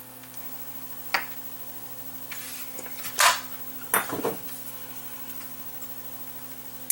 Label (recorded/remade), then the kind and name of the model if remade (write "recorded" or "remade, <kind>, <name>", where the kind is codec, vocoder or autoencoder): recorded